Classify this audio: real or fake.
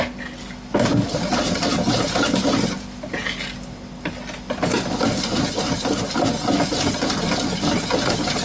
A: real